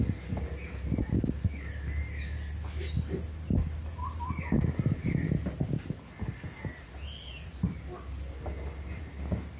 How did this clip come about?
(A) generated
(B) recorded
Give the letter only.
B